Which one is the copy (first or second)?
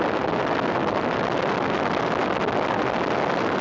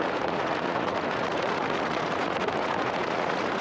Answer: second